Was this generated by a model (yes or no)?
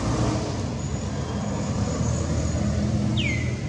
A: no